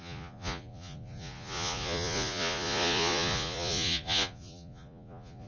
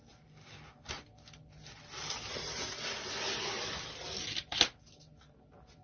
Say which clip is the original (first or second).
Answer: second